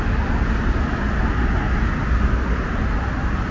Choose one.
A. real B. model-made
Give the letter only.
A